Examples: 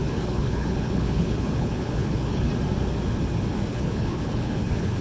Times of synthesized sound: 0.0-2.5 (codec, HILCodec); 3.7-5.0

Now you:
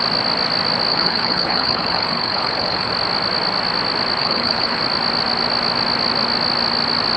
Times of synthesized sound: 0.9-2.9 (codec, HILCodec); 4.2-4.8

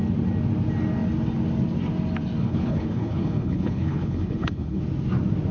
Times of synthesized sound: 2.4-4.8 (codec, HILCodec)